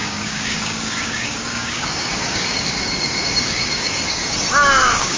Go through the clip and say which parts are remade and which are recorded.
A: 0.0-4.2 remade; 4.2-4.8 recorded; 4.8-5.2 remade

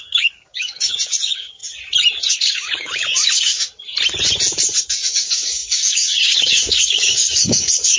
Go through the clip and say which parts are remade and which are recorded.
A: 0.0-1.6 remade; 1.6-2.2 recorded; 2.2-3.5 remade; 3.5-4.8 recorded; 4.8-8.0 remade

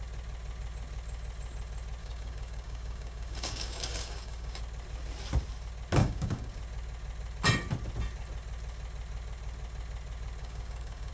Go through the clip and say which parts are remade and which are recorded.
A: 0.0-2.0 recorded; 2.0-4.6 remade; 4.6-6.0 recorded; 6.0-6.5 remade; 6.5-10.4 recorded; 10.4-11.1 remade

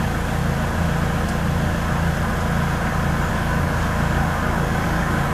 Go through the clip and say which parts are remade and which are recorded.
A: 0.0-0.4 remade; 0.4-3.3 recorded; 3.3-5.3 remade

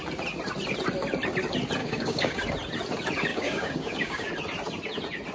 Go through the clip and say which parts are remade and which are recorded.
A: 0.0-1.8 recorded; 1.8-2.4 remade; 2.4-3.3 recorded; 3.3-4.3 remade; 4.3-5.3 recorded

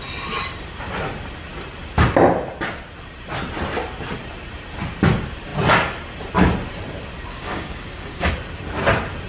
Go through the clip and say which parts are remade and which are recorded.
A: 0.0-7.3 recorded; 7.3-8.3 remade; 8.3-9.3 recorded